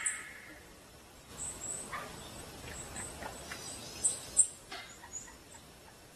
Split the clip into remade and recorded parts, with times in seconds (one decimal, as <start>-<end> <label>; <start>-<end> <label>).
0.0-6.2 recorded